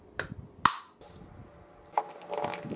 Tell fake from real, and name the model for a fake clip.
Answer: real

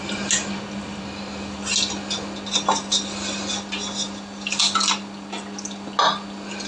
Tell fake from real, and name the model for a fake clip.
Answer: real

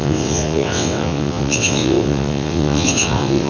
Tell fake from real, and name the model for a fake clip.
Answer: fake, vocoder, WaveNeXt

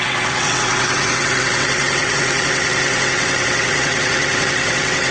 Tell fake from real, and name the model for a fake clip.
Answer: fake, vocoder, WaveNeXt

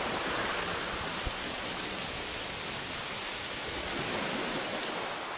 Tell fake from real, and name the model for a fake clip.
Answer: real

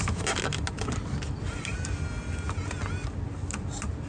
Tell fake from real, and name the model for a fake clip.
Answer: real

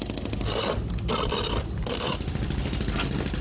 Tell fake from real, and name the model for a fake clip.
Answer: real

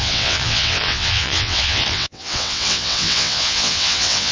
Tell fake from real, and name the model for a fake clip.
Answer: fake, vocoder, WaveNeXt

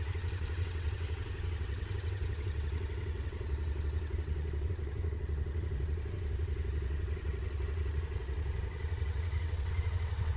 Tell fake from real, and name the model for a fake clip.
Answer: fake, vocoder, WaveNeXt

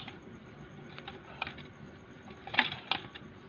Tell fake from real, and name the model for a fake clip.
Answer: real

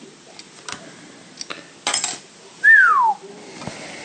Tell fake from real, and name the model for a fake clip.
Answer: real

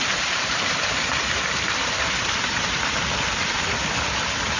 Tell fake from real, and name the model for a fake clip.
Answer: real